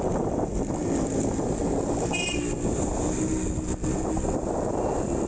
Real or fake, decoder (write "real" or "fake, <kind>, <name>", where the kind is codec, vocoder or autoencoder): real